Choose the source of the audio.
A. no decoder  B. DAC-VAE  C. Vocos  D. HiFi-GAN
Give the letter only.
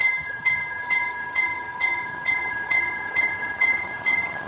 D